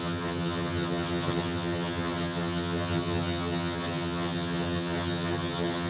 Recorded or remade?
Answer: remade